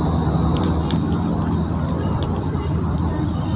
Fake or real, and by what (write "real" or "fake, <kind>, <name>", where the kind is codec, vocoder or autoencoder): fake, vocoder, BigVGAN v2